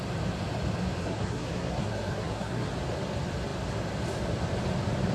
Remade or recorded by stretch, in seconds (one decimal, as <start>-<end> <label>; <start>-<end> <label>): 0.0-1.0 recorded; 1.0-2.7 remade; 2.7-5.1 recorded